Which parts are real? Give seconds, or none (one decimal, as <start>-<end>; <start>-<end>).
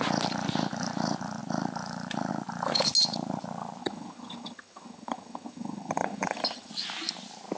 0.0-3.8; 6.7-7.6